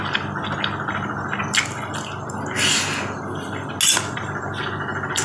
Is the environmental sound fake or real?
real